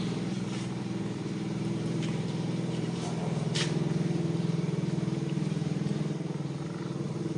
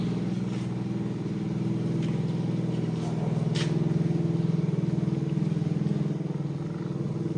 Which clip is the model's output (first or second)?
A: first